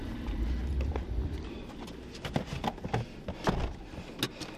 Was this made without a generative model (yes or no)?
yes